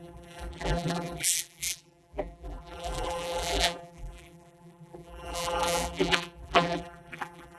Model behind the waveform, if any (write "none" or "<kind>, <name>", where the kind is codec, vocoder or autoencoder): vocoder, BigVGAN v2